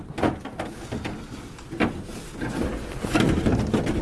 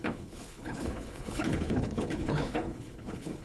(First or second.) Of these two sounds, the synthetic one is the second